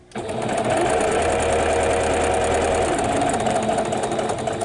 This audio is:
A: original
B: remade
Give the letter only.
A